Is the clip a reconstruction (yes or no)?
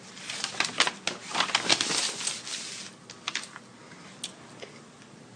no